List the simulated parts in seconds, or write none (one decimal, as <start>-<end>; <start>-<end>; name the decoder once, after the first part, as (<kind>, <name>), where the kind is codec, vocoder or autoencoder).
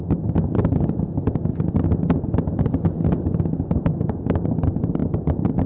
none